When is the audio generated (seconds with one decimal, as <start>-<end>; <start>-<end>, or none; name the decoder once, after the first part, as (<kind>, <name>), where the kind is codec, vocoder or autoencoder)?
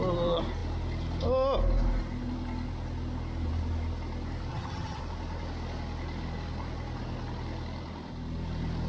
4.5-5.0 (vocoder, HiFi-GAN)